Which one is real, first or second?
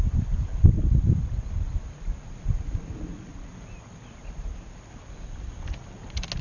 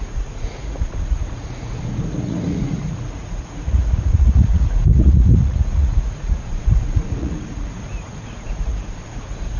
first